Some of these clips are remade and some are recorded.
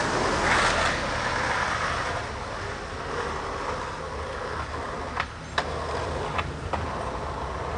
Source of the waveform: recorded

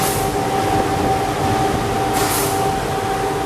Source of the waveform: recorded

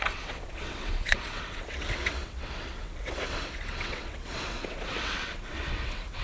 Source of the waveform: remade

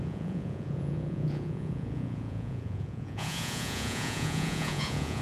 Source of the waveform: remade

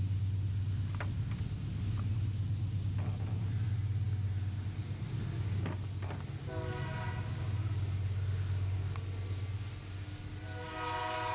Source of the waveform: recorded